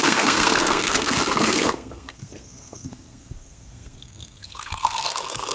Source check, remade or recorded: remade